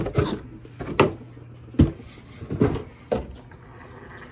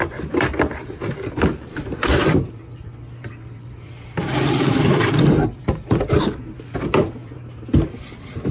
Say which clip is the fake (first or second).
second